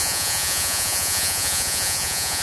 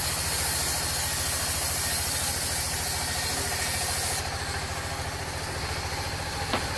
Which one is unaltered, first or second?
second